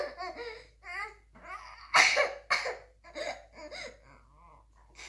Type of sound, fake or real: real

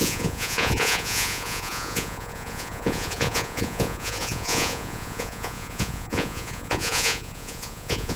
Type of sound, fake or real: fake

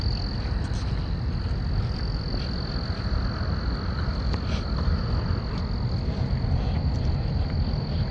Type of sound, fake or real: real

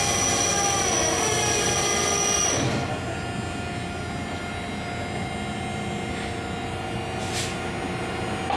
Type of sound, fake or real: real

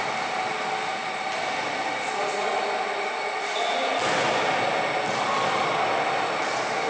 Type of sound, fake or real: real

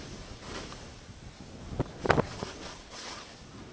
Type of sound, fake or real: real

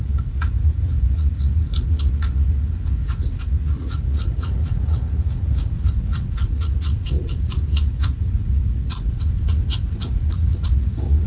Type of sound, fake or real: fake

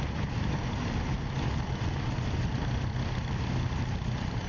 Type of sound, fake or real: real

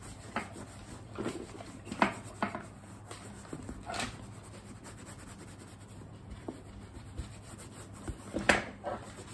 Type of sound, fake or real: real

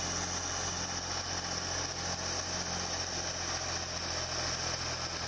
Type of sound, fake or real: real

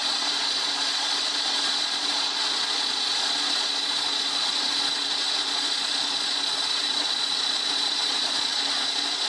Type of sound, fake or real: fake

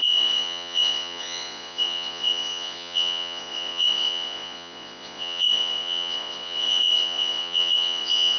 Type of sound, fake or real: fake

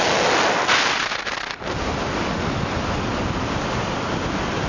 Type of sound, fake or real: real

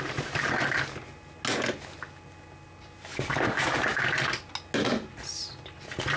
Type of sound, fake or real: real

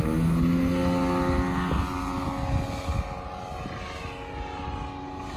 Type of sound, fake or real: real